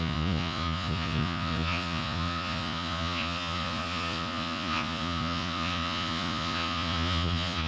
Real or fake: fake